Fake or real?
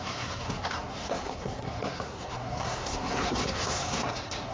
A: fake